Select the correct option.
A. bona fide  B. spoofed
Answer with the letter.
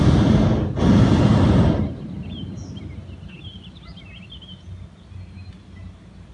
A